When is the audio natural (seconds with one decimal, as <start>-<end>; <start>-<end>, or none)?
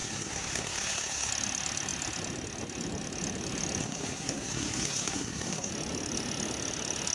1.3-3.8; 5.7-7.1